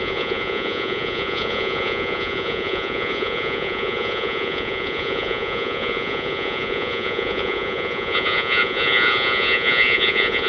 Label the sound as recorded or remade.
remade